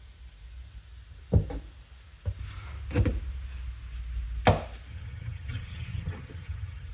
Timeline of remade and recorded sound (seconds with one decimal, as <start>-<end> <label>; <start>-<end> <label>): 0.0-4.9 recorded; 4.9-6.9 remade

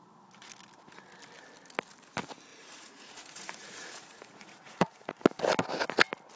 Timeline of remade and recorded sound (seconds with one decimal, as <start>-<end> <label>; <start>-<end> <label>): 0.0-2.5 recorded; 2.5-5.1 remade; 5.1-6.4 recorded

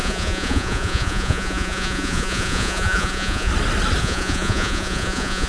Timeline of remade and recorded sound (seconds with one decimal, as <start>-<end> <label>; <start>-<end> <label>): 0.0-3.5 remade; 3.5-4.0 recorded; 4.0-5.5 remade